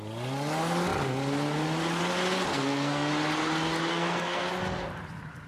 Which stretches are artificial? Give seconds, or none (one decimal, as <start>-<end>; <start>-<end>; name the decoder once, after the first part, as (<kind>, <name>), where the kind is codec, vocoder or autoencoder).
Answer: 2.5-3.1 (codec, SNAC); 3.9-4.5